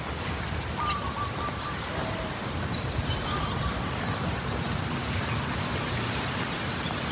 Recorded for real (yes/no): no